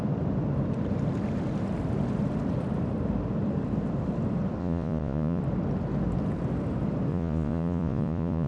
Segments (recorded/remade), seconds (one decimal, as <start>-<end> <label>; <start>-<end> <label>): 0.0-4.6 recorded; 4.6-5.4 remade; 5.4-7.1 recorded; 7.1-8.5 remade